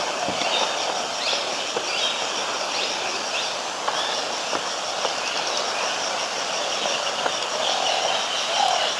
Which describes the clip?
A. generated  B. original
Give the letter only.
B